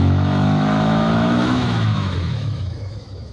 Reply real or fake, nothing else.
fake